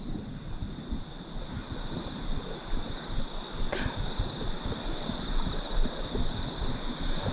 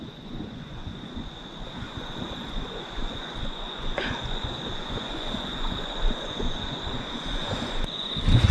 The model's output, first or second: second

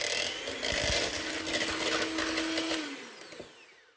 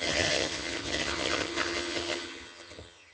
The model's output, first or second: second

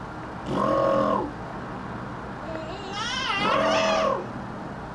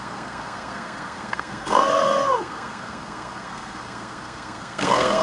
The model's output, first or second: second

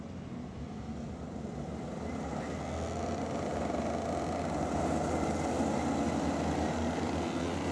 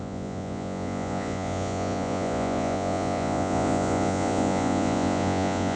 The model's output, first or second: second